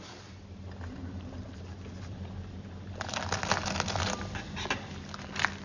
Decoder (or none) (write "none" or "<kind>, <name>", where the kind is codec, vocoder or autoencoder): none